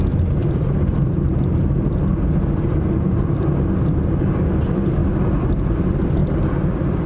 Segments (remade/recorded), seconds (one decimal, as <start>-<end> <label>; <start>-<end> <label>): 0.0-0.4 recorded; 0.4-1.5 remade; 1.5-6.2 recorded; 6.2-7.1 remade